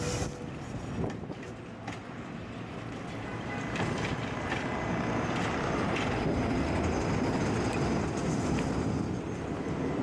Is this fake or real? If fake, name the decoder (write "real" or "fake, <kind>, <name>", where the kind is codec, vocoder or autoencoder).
real